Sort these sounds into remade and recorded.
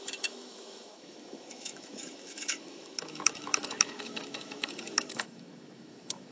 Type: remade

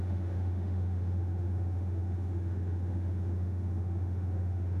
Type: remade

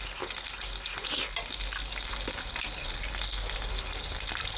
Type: recorded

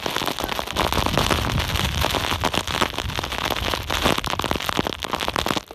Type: recorded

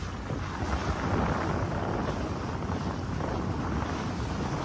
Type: recorded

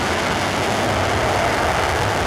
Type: recorded